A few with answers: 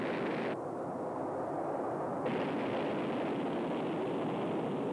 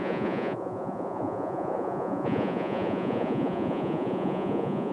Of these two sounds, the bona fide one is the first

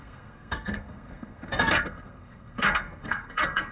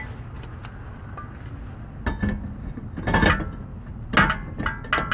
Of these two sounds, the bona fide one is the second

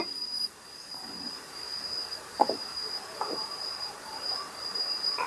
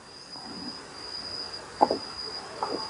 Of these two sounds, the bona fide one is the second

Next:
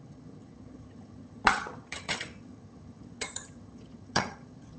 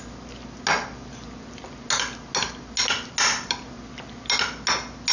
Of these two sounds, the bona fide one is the second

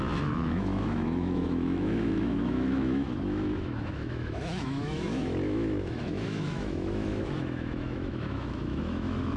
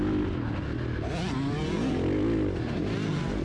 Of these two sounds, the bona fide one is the second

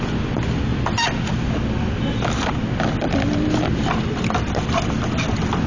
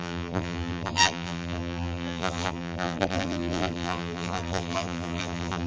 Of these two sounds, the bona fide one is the first